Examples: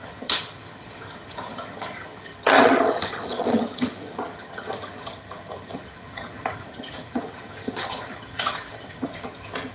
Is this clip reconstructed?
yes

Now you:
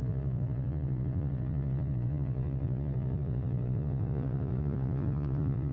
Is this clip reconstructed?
yes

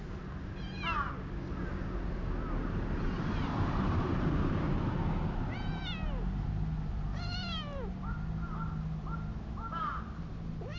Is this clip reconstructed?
no